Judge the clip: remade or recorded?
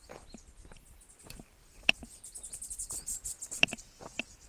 recorded